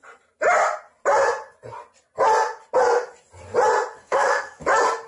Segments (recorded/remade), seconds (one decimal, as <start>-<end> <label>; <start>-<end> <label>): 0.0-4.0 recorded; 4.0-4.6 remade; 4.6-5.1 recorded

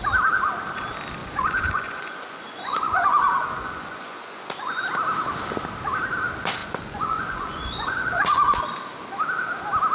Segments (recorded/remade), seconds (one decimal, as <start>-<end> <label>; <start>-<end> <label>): 0.0-1.2 recorded; 1.2-4.8 remade; 4.8-6.6 recorded; 6.6-8.6 remade; 8.6-9.9 recorded

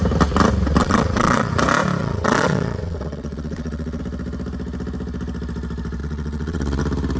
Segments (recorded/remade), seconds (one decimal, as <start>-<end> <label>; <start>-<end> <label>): 0.0-0.8 recorded; 0.8-1.5 remade; 1.5-2.0 recorded; 2.0-4.0 remade; 4.0-6.0 recorded; 6.0-6.8 remade; 6.8-7.2 recorded

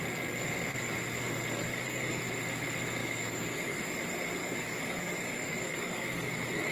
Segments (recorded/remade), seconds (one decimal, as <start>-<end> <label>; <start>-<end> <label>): 0.0-1.7 recorded; 1.7-2.2 remade; 2.2-3.0 recorded; 3.0-3.8 remade; 3.8-4.4 recorded; 4.4-6.3 remade; 6.3-6.7 recorded